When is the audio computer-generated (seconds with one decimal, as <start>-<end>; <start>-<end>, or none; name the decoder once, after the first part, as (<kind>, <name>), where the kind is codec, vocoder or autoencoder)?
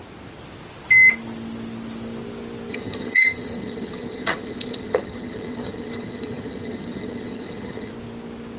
2.7-7.9 (vocoder, HiFi-GAN)